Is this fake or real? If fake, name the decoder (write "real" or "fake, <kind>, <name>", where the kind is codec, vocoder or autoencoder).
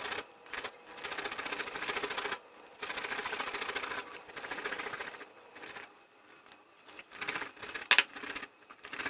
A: real